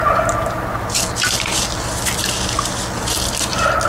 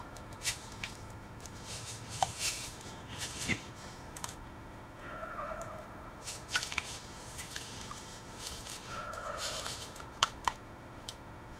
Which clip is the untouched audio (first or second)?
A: first